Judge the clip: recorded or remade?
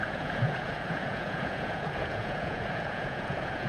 remade